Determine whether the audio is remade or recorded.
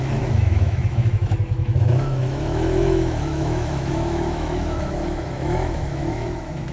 remade